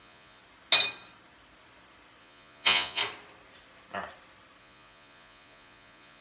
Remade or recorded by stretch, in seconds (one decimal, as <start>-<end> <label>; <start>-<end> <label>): 0.0-0.4 remade; 0.4-2.2 recorded; 2.2-3.0 remade; 3.0-4.6 recorded; 4.6-6.2 remade